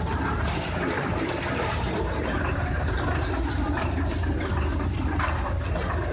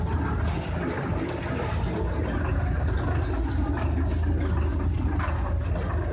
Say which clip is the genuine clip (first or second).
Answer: second